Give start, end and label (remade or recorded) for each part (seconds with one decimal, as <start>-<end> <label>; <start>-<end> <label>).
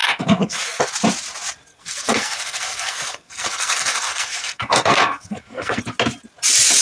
0.0-0.9 remade; 0.9-1.7 recorded; 1.7-5.8 remade; 5.8-6.8 recorded